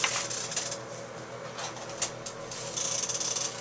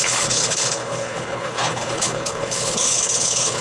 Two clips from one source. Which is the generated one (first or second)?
second